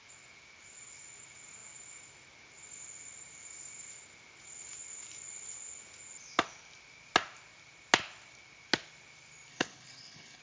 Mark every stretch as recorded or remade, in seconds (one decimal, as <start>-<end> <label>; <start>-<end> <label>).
0.0-9.5 recorded; 9.5-10.4 remade